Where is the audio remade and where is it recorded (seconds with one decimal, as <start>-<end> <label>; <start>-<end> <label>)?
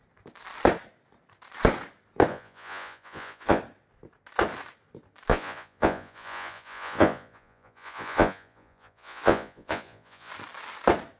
0.0-2.3 recorded; 2.3-3.6 remade; 3.6-5.3 recorded; 5.3-10.3 remade; 10.3-11.2 recorded